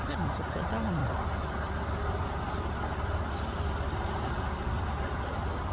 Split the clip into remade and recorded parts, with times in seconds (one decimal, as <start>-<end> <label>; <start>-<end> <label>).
0.0-5.7 recorded